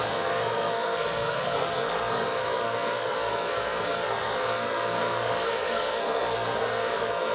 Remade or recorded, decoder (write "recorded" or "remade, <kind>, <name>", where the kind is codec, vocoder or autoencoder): remade, codec, SNAC